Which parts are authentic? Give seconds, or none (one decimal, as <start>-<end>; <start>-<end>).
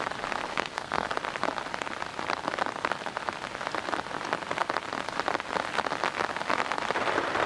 0.0-0.5; 1.1-7.5